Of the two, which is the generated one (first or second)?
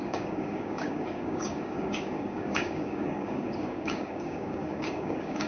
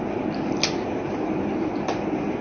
first